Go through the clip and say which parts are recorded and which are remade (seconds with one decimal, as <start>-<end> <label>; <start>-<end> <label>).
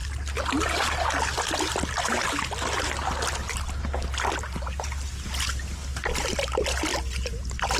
0.0-7.8 recorded